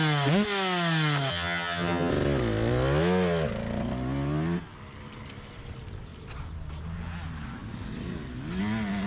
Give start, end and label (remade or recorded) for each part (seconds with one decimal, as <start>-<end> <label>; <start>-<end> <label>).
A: 0.0-1.3 recorded; 1.3-2.1 remade; 2.1-9.1 recorded

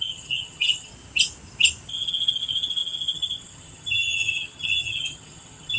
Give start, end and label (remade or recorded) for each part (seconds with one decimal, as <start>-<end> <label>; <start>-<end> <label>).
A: 0.0-0.9 remade; 0.9-1.9 recorded; 1.9-5.8 remade

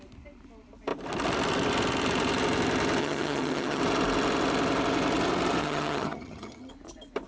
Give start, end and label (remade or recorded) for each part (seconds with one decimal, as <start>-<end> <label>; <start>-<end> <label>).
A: 0.0-3.0 recorded; 3.0-3.8 remade; 3.8-5.6 recorded; 5.6-6.7 remade; 6.7-7.3 recorded

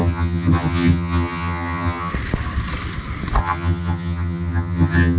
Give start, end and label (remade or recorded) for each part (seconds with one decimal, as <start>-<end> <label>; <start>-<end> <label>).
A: 0.0-2.1 remade; 2.1-3.4 recorded; 3.4-5.2 remade

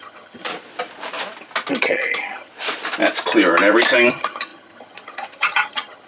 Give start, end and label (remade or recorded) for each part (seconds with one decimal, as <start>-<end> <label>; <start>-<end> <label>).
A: 0.0-0.5 remade; 0.5-1.7 recorded; 1.7-2.5 remade; 2.5-4.1 recorded; 4.1-6.1 remade